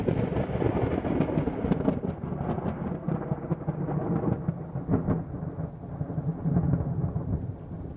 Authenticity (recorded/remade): recorded